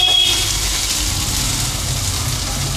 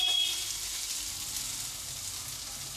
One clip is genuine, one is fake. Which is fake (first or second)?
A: first